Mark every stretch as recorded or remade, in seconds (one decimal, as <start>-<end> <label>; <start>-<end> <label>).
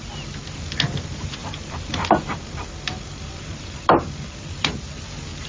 0.0-1.4 recorded; 1.4-4.7 remade; 4.7-5.5 recorded